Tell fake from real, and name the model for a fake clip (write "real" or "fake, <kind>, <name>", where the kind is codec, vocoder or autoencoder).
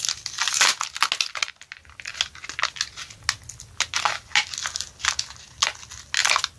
real